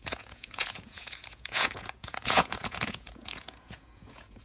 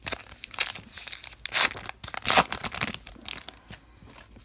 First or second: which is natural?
second